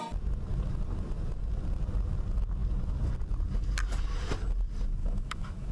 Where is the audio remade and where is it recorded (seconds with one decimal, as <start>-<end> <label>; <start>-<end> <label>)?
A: 0.0-5.0 recorded; 5.0-5.7 remade